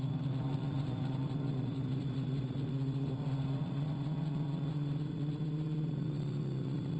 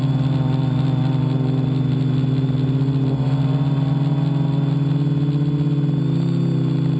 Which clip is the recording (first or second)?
second